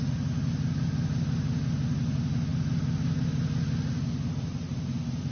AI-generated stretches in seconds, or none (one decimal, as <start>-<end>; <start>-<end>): none